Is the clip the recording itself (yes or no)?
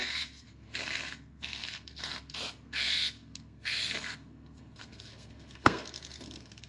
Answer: no